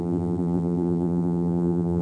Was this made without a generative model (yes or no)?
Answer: no